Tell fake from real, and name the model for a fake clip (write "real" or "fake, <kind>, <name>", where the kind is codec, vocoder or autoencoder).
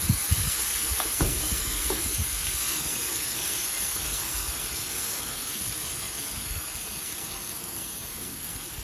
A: fake, codec, SNAC